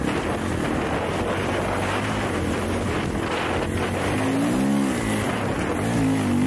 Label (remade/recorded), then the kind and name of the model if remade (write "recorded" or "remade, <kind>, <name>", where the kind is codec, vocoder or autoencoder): recorded